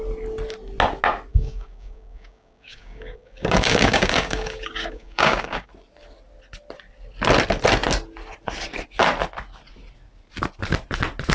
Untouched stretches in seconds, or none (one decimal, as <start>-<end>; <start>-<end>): 0.0-1.3; 5.7-11.3